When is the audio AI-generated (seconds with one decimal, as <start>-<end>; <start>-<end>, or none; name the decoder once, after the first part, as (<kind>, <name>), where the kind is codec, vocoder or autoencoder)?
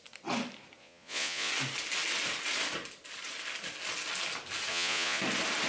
0.8-1.5 (vocoder, Vocos); 4.7-5.2